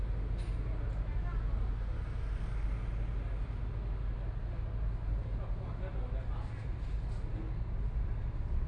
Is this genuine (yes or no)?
yes